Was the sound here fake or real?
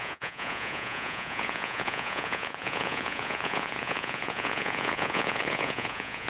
fake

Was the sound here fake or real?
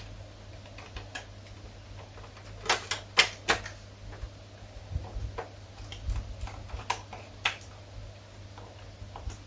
real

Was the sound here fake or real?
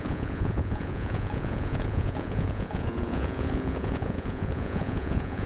fake